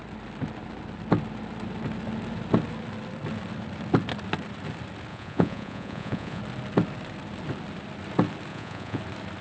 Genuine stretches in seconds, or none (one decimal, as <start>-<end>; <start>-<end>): 0.0-5.1; 6.4-8.5; 9.0-9.4